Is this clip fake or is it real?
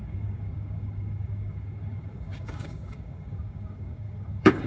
fake